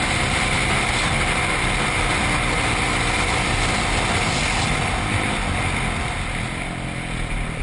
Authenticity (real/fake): real